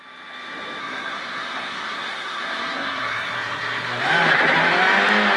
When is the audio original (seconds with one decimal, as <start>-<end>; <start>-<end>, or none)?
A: 0.0-0.8; 4.0-5.4